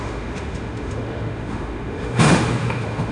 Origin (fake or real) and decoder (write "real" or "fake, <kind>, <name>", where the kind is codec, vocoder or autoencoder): fake, autoencoder, DAC-VAE